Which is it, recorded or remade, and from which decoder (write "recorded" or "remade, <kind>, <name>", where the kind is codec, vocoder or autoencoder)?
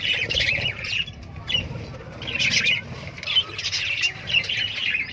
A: remade, vocoder, BigVGAN v2